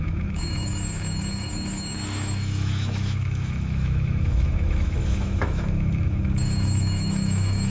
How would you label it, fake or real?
fake